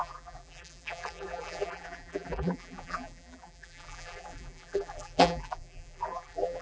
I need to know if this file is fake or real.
fake